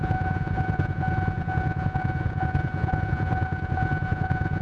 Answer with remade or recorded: remade